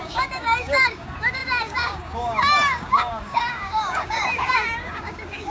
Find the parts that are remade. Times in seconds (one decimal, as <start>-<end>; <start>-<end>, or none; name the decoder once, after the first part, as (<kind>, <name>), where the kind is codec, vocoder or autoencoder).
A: 0.0-5.5 (codec, DAC)